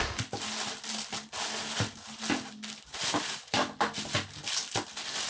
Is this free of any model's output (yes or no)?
yes